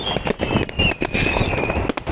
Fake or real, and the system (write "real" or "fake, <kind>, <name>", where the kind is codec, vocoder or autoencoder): real